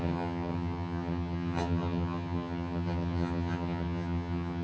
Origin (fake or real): fake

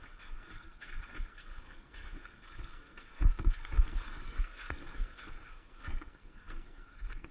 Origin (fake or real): fake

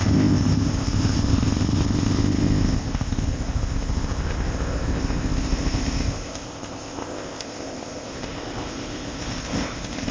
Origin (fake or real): fake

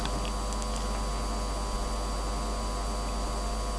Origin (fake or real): real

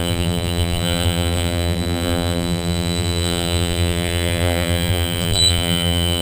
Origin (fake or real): fake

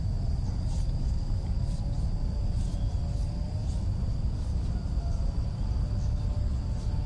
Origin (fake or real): real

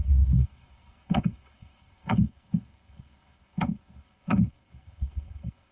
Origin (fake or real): fake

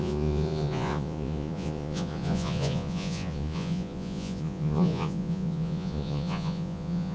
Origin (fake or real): fake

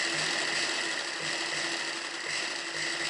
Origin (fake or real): real